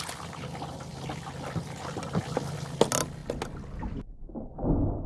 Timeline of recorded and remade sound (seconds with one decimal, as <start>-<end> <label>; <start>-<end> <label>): 0.0-5.1 recorded